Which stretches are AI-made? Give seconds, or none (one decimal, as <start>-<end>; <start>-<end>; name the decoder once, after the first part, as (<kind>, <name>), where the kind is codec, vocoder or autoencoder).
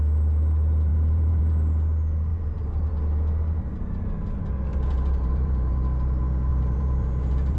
0.9-1.4 (vocoder, BigVGAN v2); 2.3-2.9; 4.7-5.8; 6.5-7.6